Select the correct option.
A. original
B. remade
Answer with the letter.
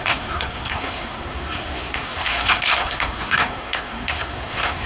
B